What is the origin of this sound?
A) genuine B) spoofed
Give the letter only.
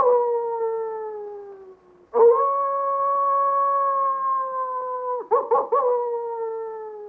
A